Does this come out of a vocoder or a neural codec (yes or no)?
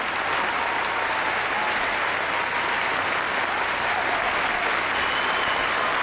no